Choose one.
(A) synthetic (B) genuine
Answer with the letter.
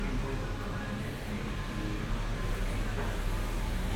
B